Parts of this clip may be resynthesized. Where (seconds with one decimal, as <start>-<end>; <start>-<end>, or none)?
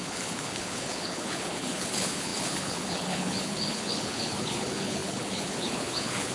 0.0-6.3